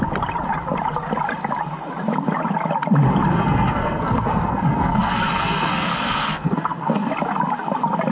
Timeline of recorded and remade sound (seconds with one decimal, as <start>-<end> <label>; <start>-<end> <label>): 0.0-3.3 recorded; 3.3-7.1 remade; 7.1-8.1 recorded